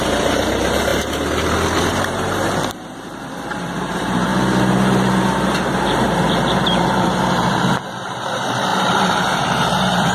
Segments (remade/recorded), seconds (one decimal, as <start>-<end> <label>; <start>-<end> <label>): 0.0-0.9 remade; 0.9-1.8 recorded; 1.8-4.3 remade; 4.3-5.8 recorded; 5.8-10.1 remade